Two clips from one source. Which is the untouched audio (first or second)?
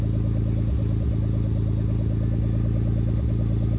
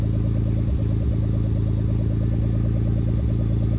first